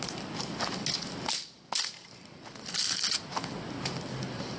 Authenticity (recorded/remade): recorded